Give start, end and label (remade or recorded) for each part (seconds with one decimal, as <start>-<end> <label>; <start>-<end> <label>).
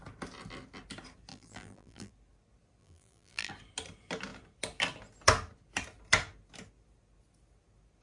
0.0-1.3 recorded; 1.3-2.1 remade; 2.1-2.8 recorded; 2.8-3.5 remade; 3.5-8.0 recorded